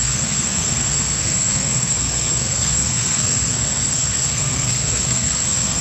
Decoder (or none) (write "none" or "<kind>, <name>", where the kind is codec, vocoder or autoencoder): codec, SNAC